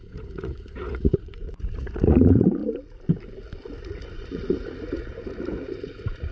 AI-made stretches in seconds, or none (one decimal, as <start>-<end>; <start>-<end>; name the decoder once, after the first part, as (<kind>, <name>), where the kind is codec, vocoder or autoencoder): 0.0-2.6 (vocoder, Vocos); 3.7-6.3